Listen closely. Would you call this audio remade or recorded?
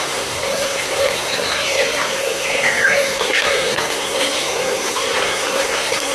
remade